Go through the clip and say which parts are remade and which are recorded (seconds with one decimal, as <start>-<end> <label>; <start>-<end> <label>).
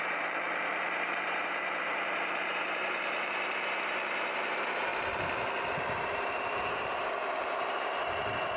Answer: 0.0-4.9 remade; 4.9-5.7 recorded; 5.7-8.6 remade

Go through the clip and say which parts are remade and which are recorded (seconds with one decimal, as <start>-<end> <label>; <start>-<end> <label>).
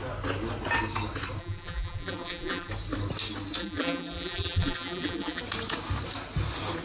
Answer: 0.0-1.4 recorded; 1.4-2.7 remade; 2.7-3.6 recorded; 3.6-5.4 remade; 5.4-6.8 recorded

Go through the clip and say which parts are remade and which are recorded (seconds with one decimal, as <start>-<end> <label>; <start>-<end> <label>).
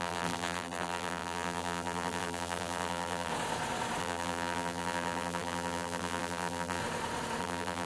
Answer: 0.0-3.3 remade; 3.3-4.0 recorded; 4.0-6.8 remade; 6.8-7.4 recorded; 7.4-7.9 remade